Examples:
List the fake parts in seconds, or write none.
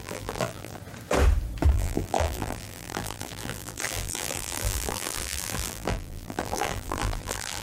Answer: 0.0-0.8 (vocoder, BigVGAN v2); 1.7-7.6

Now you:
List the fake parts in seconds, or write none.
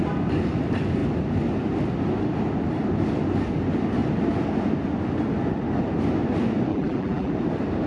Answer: 6.7-7.3 (vocoder, BigVGAN v2)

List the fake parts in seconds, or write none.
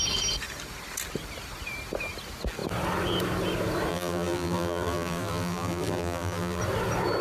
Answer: 3.9-6.6 (vocoder, BigVGAN v2)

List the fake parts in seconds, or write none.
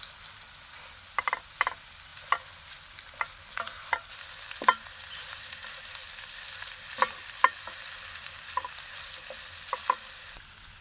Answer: 2.1-7.1 (vocoder, BigVGAN v2)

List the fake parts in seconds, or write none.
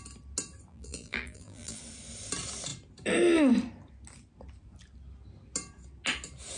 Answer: 0.7-1.8 (vocoder, BigVGAN v2)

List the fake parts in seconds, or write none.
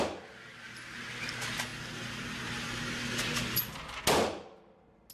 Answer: none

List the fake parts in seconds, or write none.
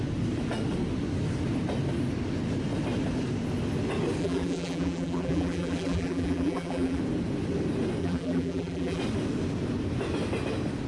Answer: 4.2-7.0 (vocoder, BigVGAN v2); 8.0-9.0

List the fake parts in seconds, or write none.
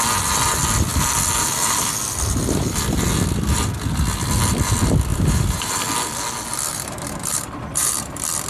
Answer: 5.1-5.7 (vocoder, BigVGAN v2); 6.7-8.1